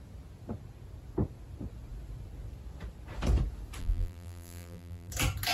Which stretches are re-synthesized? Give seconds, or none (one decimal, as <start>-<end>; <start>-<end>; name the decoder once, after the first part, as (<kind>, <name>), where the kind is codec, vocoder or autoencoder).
3.8-5.1 (vocoder, BigVGAN v2)